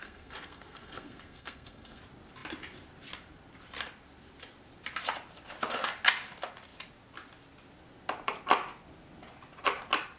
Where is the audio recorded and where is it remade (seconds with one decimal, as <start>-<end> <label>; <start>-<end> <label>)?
0.0-2.0 remade; 2.0-10.2 recorded